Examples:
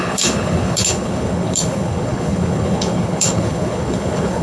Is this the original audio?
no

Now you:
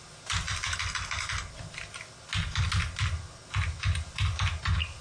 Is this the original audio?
yes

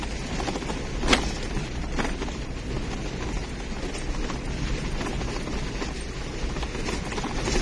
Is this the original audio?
yes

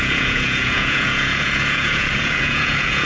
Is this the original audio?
no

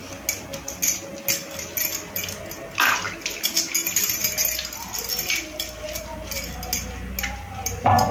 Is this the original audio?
yes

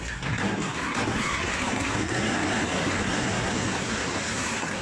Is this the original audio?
no